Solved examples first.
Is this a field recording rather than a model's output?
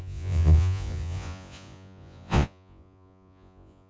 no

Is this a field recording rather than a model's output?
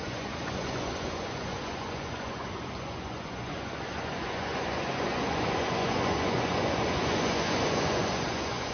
no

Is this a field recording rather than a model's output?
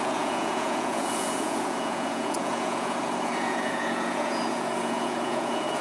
no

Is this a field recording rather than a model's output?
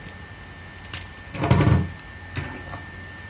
yes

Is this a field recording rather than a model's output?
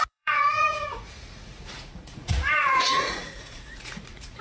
no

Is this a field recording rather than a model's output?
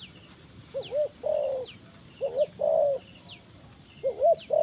yes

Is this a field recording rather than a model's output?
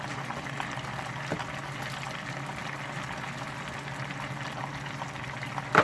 yes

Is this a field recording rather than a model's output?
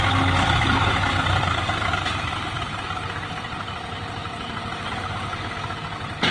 yes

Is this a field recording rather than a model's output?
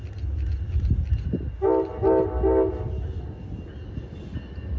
yes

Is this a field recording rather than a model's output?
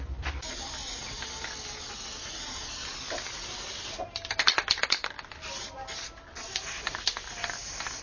yes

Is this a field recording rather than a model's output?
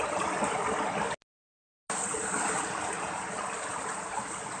yes